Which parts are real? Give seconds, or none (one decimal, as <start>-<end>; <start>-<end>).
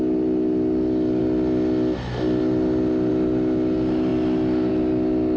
0.0-5.4